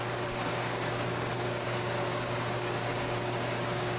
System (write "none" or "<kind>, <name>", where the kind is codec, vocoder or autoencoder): codec, DAC